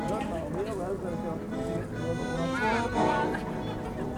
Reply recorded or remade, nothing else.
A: recorded